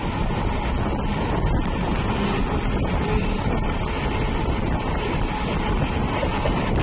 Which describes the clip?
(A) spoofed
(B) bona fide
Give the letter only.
B